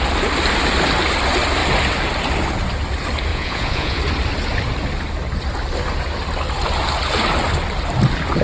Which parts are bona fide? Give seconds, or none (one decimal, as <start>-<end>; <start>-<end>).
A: 0.0-3.3; 4.0-8.4